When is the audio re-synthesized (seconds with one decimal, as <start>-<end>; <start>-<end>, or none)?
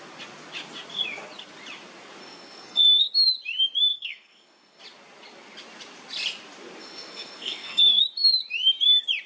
2.2-3.1; 3.9-4.8; 6.8-8.0